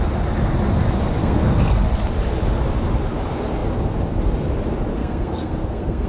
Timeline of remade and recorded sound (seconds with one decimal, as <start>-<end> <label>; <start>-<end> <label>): 0.0-1.2 recorded; 1.2-1.8 remade; 1.8-5.0 recorded; 5.0-6.1 remade